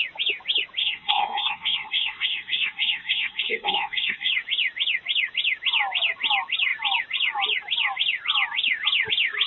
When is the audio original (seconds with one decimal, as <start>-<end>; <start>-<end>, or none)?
0.0-0.8; 4.3-9.5